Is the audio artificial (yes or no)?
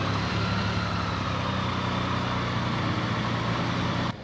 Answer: no